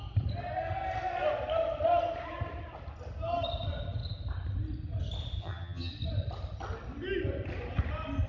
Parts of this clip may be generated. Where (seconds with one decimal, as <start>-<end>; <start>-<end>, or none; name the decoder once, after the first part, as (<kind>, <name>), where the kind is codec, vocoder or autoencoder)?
5.4-5.9 (vocoder, HiFi-GAN)

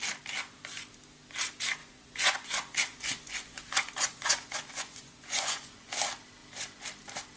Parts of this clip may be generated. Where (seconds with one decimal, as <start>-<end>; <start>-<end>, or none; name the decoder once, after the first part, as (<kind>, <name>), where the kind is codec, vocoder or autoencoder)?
1.8-5.9 (vocoder, Vocos)

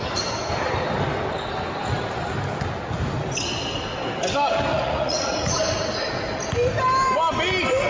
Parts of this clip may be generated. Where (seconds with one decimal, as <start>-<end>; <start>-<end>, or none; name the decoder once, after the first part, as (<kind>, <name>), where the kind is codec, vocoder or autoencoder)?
4.7-5.5 (vocoder, Vocos)

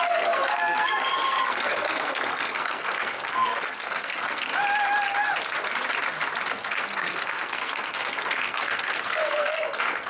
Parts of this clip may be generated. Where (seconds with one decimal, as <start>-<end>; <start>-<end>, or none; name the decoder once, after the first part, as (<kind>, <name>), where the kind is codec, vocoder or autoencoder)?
0.0-4.5 (codec, SNAC); 6.5-10.1

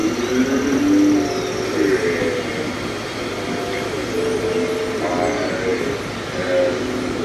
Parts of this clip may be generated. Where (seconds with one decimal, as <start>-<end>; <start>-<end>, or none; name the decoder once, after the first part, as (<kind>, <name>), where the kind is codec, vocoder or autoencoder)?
none

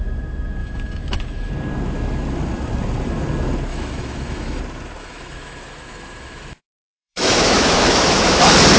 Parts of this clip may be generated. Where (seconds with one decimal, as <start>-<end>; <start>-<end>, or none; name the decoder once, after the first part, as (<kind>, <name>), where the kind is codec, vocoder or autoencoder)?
0.6-1.5 (autoencoder, DAC-VAE); 3.7-4.6; 5.0-8.4

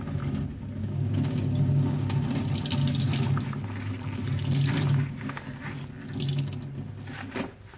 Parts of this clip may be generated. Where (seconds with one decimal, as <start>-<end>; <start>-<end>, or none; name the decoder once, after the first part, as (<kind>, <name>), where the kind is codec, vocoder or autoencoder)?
0.8-2.4 (codec, DAC)

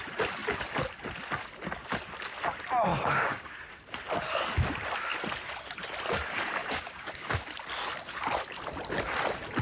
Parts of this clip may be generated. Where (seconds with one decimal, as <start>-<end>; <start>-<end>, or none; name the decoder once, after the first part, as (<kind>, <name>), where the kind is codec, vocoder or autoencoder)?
2.9-3.6 (codec, DAC); 6.6-7.4